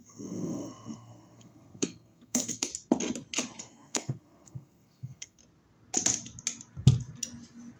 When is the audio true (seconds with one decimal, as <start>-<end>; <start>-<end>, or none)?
2.7-3.6; 5.4-7.8